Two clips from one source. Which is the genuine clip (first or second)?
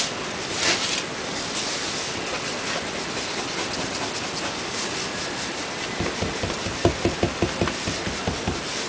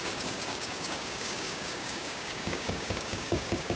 first